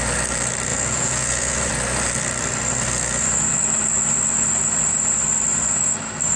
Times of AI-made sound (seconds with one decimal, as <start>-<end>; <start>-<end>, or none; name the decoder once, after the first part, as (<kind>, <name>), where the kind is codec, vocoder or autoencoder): 0.7-1.7 (vocoder, Vocos)